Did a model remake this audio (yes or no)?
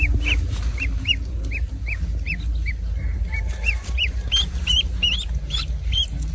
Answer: no